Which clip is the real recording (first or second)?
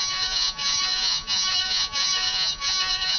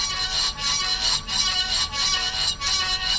second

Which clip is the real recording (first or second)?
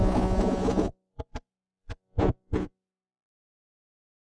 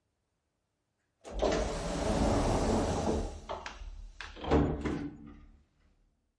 second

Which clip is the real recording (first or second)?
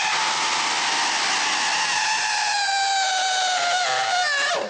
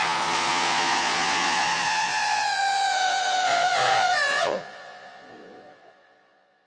first